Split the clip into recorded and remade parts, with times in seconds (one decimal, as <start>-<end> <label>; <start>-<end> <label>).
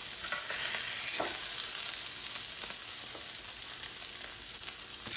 0.0-5.2 recorded